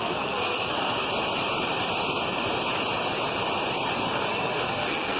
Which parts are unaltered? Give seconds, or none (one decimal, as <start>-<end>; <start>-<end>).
1.0-4.1

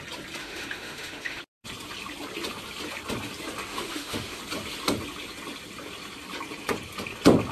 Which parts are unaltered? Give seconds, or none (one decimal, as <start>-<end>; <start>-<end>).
0.0-0.4; 1.4-3.7; 4.4-7.5

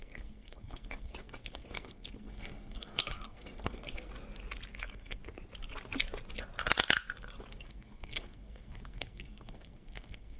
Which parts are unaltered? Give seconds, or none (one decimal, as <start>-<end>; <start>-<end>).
4.1-4.8; 5.2-7.6

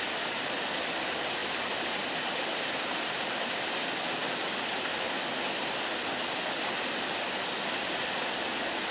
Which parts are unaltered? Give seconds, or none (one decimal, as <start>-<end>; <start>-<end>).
0.0-8.9